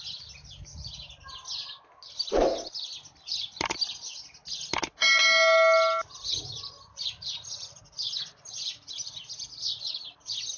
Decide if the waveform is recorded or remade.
recorded